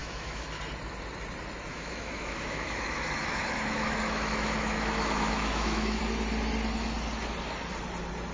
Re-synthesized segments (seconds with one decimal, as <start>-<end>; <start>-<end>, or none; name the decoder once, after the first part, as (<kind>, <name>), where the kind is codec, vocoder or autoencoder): 0.0-0.6 (autoencoder, DAC-VAE); 1.7-6.0